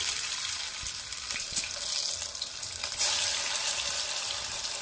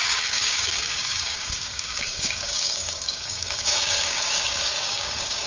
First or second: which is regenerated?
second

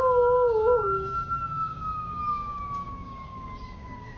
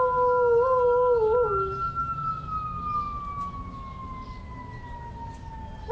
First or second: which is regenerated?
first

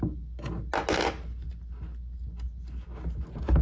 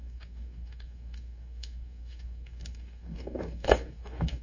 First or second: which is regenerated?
second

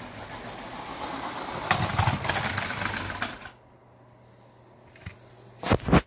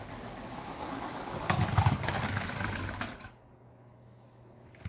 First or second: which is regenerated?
second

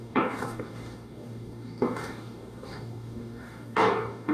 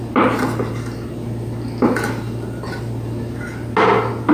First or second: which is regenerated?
first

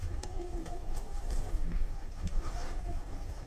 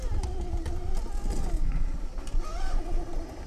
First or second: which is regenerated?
first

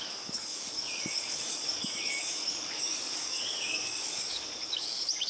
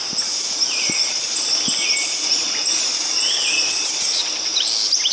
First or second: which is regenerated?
first